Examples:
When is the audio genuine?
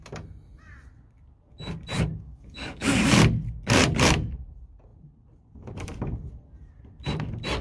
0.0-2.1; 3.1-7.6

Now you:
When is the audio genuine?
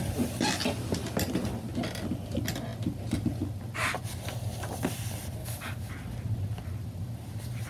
0.0-5.4; 5.9-7.7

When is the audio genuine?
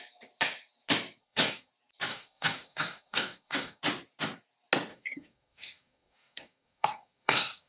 0.0-1.2; 1.7-2.1; 3.8-4.9